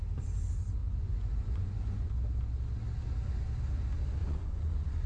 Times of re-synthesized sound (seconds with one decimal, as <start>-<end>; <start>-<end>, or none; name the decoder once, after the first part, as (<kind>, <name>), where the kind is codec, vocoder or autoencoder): 0.8-2.1 (vocoder, Vocos); 4.2-5.1